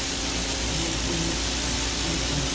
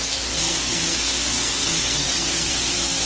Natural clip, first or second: first